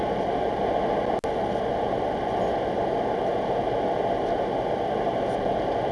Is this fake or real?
real